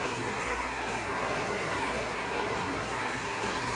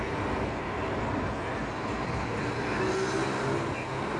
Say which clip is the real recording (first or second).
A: second